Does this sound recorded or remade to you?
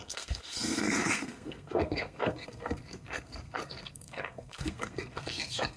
remade